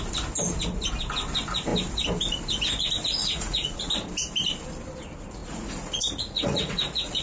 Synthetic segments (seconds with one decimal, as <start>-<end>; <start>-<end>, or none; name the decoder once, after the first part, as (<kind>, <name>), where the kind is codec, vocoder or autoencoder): 3.2-3.9 (vocoder, Vocos); 5.4-7.2